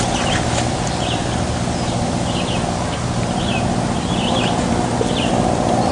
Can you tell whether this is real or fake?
real